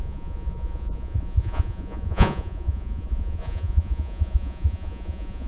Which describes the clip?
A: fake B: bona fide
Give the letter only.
A